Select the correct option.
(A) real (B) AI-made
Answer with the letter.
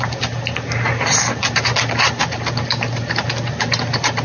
A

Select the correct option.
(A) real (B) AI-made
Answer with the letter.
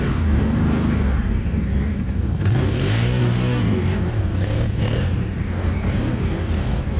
B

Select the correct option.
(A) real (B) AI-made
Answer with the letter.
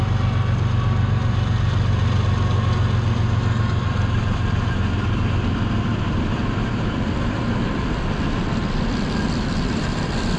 B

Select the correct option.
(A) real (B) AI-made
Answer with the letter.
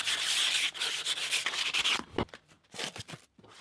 A